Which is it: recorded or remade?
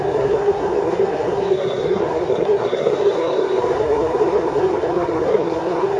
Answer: remade